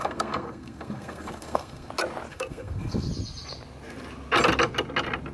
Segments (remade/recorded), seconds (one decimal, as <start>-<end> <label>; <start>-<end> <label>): 0.0-1.9 remade; 1.9-2.3 recorded; 2.3-3.1 remade; 3.1-5.3 recorded